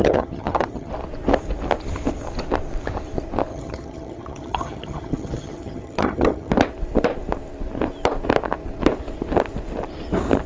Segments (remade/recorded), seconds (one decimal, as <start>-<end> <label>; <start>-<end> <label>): 0.0-0.9 remade; 0.9-3.5 recorded; 3.5-6.5 remade; 6.5-10.5 recorded

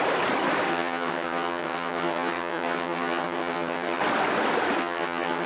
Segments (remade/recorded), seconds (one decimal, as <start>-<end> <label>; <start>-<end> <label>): 0.0-0.7 recorded; 0.7-4.0 remade; 4.0-4.8 recorded; 4.8-5.5 remade

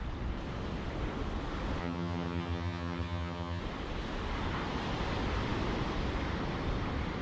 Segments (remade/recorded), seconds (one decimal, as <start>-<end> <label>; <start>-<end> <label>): 0.0-1.8 recorded; 1.8-3.6 remade; 3.6-7.2 recorded

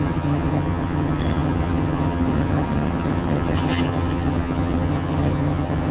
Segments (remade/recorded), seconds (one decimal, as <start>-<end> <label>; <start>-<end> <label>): 0.0-5.9 remade